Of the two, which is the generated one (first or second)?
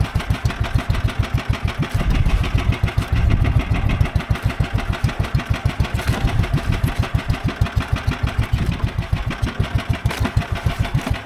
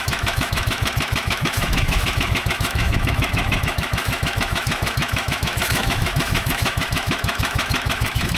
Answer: second